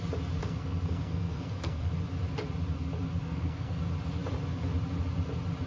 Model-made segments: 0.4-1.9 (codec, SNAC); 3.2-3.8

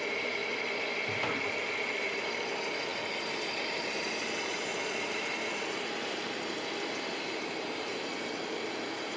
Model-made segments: 0.0-0.4 (vocoder, BigVGAN v2); 1.9-8.1

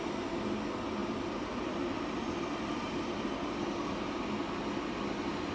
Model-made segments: 0.0-3.6 (vocoder, BigVGAN v2)

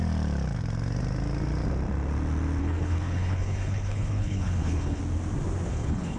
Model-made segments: 2.6-5.0 (codec, HILCodec); 5.7-6.2

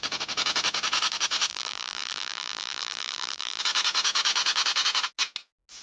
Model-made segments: 1.5-3.6 (vocoder, BigVGAN v2)